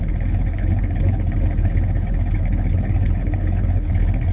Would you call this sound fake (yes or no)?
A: yes